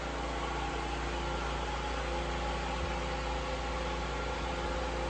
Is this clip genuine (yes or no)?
yes